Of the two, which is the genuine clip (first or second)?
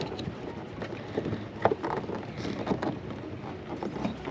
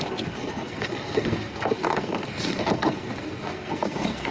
first